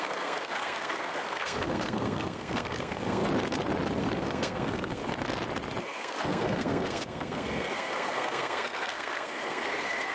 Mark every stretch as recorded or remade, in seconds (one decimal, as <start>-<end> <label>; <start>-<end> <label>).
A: 0.0-3.2 remade; 3.2-4.0 recorded; 4.0-5.0 remade; 5.0-5.8 recorded; 5.8-10.1 remade